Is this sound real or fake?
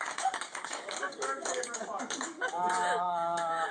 fake